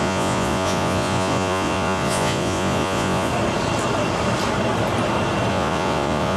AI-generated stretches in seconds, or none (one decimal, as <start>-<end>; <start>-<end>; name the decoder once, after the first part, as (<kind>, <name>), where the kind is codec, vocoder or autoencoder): 0.0-3.3 (vocoder, Vocos); 5.5-6.4